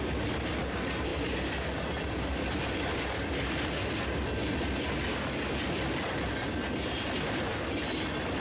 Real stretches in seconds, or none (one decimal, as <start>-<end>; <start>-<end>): 0.0-8.4